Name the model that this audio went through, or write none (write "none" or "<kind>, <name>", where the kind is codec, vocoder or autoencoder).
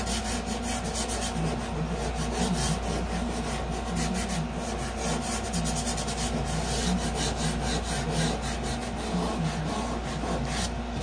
none